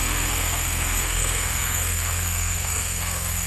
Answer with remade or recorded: remade